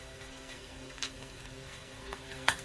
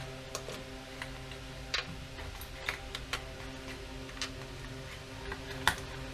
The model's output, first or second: first